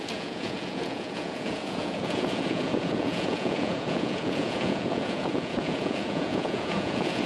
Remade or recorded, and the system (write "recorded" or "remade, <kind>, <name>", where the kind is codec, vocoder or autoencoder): remade, vocoder, Vocos